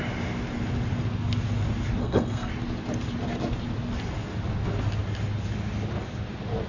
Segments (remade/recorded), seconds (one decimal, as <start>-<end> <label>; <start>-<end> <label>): 0.0-2.0 recorded; 2.0-2.5 remade; 2.5-6.7 recorded